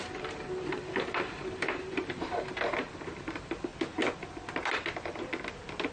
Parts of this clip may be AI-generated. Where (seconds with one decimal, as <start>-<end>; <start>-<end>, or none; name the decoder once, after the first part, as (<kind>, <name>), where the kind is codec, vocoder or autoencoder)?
0.0-3.7 (vocoder, BigVGAN v2)